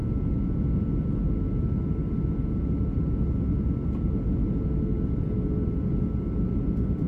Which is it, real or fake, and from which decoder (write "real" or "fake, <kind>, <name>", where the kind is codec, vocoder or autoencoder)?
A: real